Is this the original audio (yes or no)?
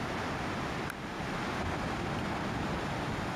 yes